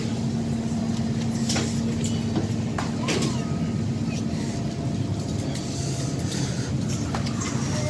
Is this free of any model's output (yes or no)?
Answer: yes